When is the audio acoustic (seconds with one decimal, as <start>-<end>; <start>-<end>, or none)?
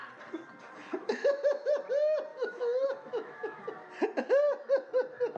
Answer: 0.0-1.0; 1.7-2.3; 3.6-5.4